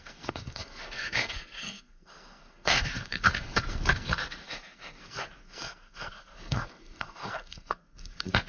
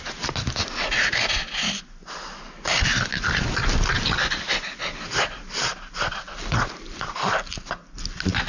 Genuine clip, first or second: second